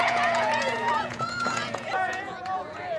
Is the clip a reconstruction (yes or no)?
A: yes